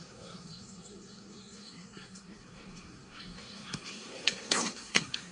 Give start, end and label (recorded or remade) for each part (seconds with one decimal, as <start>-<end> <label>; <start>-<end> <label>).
0.0-5.3 remade